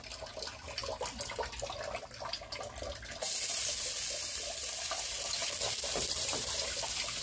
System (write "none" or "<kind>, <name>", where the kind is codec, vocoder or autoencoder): none